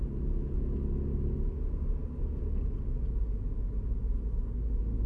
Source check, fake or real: real